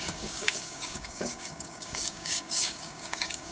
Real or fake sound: fake